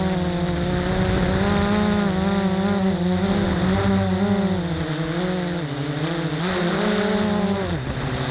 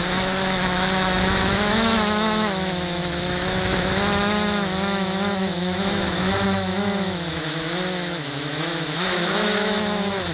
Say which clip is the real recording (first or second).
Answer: first